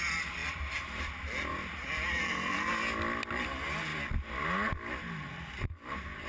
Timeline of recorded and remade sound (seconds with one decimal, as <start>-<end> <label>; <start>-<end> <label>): 0.0-1.5 recorded; 1.5-2.7 remade; 2.7-6.3 recorded